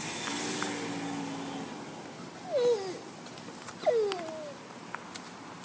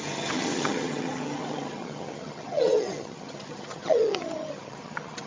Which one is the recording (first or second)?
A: first